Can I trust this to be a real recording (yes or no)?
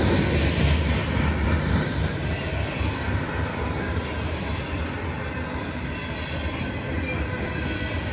yes